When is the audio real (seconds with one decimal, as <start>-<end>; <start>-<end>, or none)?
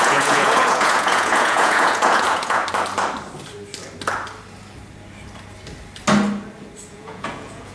2.6-6.9